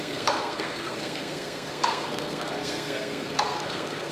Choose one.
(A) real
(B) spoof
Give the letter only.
B